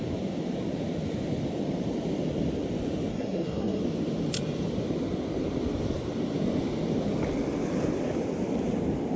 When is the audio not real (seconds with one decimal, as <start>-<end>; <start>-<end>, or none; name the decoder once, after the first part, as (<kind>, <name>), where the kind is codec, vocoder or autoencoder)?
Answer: 3.1-3.8 (codec, SNAC)